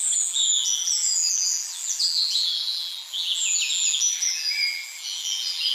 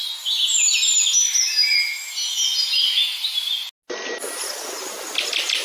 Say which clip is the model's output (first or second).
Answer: first